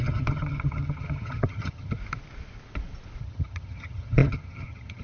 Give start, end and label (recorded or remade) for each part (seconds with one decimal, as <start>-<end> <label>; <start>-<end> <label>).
0.0-2.0 remade; 2.0-3.2 recorded; 3.2-5.0 remade